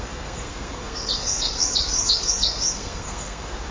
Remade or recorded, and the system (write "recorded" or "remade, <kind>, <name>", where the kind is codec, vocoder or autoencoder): remade, codec, SNAC